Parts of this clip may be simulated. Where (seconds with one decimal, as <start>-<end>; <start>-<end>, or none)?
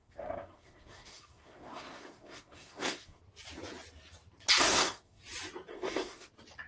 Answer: 0.0-3.2; 4.7-5.2; 5.7-6.3